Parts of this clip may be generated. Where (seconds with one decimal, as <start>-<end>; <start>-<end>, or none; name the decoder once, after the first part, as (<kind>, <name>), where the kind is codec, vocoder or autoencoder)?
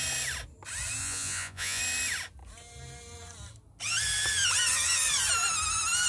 1.0-1.8 (vocoder, Vocos)